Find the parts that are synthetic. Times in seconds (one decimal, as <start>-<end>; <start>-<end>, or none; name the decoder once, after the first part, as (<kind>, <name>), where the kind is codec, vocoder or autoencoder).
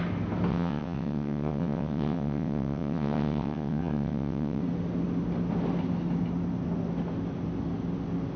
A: 0.5-4.6 (vocoder, WaveNeXt)